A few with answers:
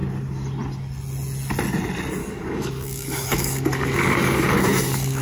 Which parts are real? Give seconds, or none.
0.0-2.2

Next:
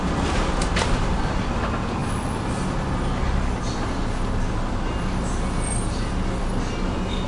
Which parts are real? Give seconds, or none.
0.0-7.3

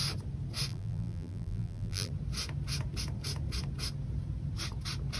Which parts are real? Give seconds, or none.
0.0-0.7; 2.1-5.2